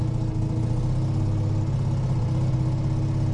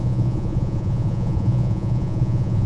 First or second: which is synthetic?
second